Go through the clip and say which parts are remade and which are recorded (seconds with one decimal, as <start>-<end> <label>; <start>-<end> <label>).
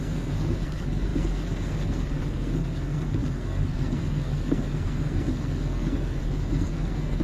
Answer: 0.0-7.2 remade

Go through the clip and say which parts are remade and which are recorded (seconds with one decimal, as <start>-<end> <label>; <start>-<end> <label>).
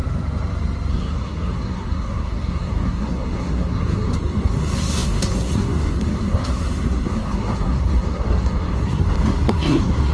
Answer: 0.0-0.9 recorded; 0.9-10.1 remade